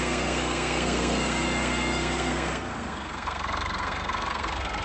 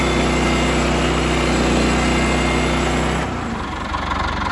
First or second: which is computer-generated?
first